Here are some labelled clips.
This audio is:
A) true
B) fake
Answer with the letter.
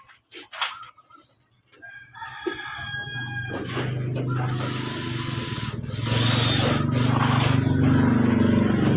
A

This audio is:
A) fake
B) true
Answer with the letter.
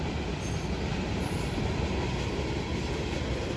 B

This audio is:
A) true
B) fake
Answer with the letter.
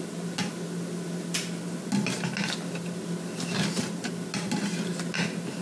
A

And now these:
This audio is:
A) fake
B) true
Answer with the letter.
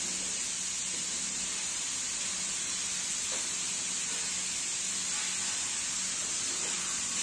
B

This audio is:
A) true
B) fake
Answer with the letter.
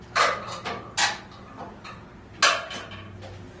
A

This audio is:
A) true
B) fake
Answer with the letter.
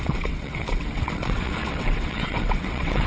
B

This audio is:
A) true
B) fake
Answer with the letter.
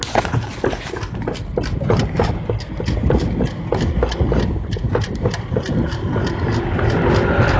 A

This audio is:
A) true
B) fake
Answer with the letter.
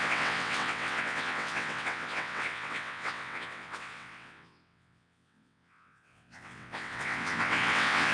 B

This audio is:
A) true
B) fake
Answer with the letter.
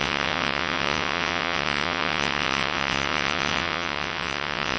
B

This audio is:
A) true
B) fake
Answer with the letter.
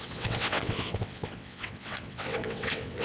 B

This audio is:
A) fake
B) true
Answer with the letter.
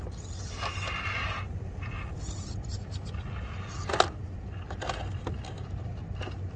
B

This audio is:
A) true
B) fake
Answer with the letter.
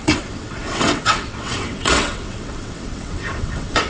B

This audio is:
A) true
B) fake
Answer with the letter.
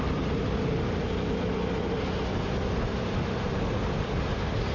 A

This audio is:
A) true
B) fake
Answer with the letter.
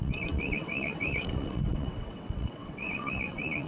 B